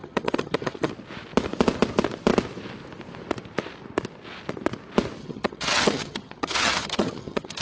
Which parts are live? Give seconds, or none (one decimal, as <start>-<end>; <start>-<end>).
0.9-5.2